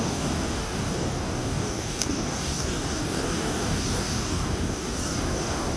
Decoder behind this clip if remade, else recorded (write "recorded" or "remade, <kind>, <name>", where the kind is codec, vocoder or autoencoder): remade, codec, DAC